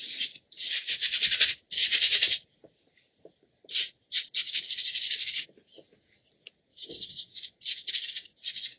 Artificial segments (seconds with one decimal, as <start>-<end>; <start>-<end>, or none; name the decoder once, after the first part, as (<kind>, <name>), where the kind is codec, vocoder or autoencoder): 1.8-4.6 (vocoder, BigVGAN v2)